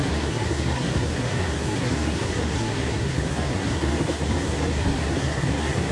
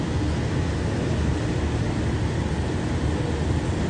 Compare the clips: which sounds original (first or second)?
second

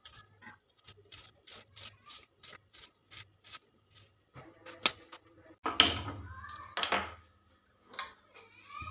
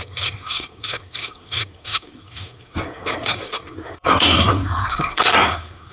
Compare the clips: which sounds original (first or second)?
first